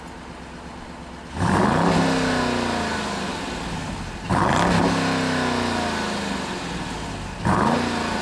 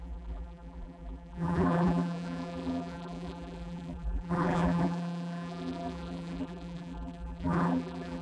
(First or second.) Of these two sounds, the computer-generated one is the second